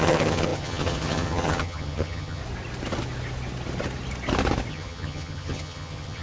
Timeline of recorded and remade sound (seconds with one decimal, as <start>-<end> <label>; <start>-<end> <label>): 0.0-2.4 remade; 2.4-4.7 recorded; 4.7-6.2 remade